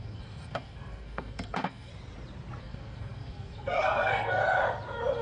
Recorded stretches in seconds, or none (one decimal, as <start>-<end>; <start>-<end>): 1.9-2.6; 4.4-5.2